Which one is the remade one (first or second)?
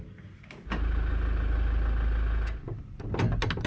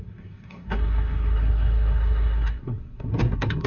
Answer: second